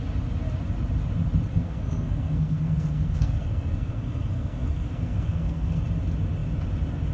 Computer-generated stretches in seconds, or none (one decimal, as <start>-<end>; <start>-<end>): 1.5-5.8